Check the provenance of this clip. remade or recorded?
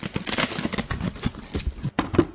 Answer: remade